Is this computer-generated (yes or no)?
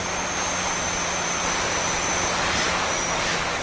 yes